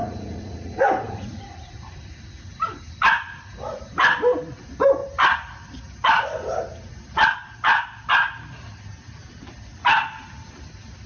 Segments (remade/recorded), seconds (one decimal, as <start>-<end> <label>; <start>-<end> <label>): 0.0-2.5 remade; 2.5-11.1 recorded